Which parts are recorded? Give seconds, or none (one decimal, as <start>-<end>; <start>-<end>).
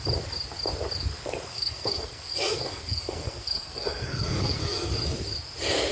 0.0-1.5; 4.9-5.9